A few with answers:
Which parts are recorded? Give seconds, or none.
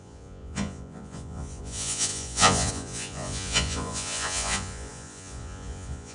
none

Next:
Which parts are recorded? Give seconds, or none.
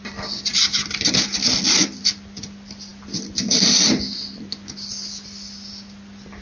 0.0-6.4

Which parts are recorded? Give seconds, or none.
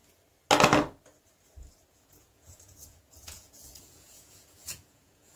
0.0-1.9